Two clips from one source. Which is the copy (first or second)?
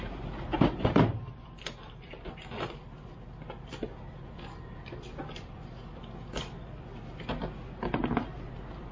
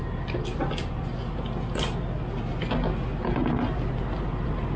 first